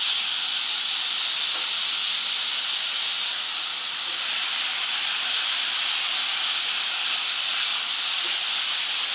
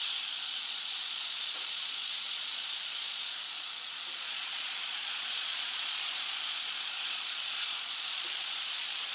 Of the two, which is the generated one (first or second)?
second